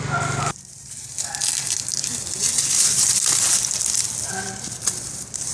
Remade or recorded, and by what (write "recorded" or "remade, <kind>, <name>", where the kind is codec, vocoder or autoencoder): recorded